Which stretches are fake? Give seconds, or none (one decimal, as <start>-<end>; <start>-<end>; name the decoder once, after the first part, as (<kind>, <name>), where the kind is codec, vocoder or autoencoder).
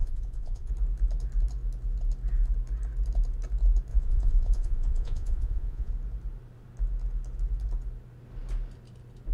0.0-0.7 (vocoder, Vocos); 3.9-5.9